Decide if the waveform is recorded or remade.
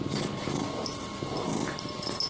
recorded